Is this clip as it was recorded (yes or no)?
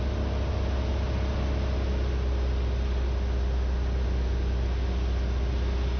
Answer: yes